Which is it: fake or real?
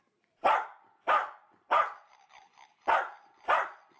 fake